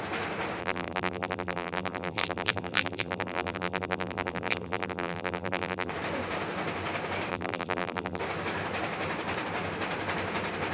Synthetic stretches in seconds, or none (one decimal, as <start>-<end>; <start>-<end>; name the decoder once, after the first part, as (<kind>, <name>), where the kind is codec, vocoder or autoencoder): 0.6-5.9 (vocoder, BigVGAN v2); 7.3-8.2